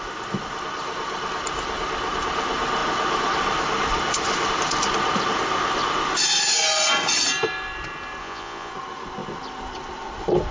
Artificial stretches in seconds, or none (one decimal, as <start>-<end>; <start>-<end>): 8.2-8.7